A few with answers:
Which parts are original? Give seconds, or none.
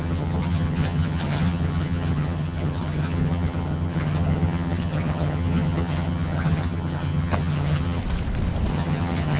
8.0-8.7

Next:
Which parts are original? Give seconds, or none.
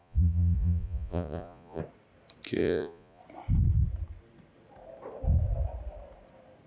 1.8-2.6; 3.2-6.7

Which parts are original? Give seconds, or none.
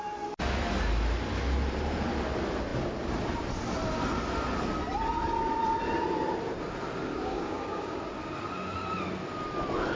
0.0-7.1; 8.0-10.0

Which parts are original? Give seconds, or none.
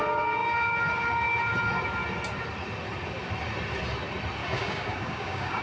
0.0-4.4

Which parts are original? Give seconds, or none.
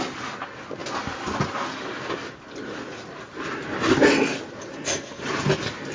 0.0-5.9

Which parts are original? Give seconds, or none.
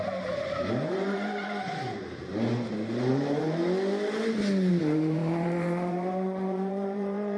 3.6-4.7